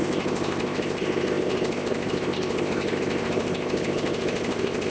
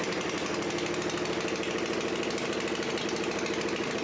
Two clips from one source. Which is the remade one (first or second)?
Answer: first